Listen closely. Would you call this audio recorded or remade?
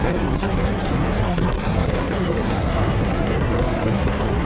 remade